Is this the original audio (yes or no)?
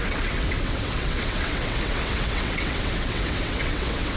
no